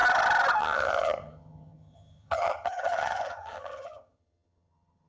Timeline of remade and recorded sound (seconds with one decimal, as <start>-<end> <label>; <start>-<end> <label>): 0.0-0.6 recorded; 0.6-5.1 remade